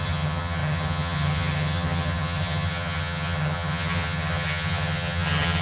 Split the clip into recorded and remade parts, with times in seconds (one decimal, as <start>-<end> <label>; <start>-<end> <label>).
0.0-5.6 remade